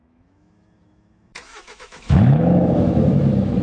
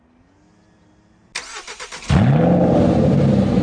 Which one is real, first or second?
second